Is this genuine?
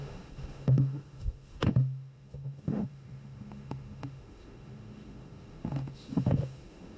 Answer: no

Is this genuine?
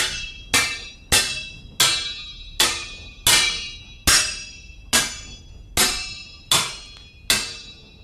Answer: yes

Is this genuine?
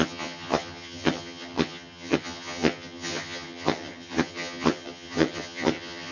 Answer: no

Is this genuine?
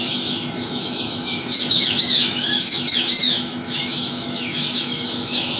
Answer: no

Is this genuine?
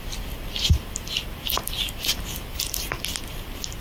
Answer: yes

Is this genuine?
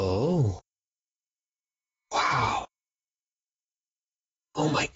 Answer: no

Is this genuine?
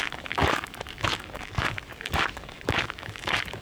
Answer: no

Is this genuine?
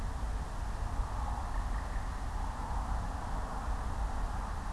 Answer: yes